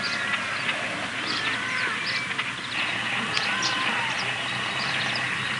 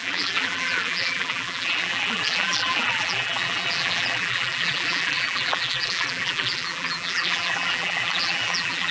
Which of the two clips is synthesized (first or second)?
second